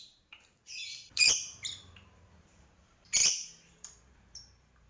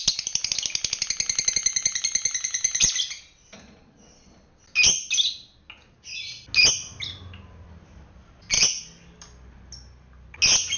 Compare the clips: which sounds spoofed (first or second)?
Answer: first